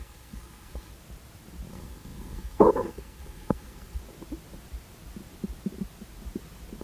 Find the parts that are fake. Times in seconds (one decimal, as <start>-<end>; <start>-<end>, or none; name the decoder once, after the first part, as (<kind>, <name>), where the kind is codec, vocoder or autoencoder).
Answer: 0.0-0.9 (codec, SNAC); 1.7-4.0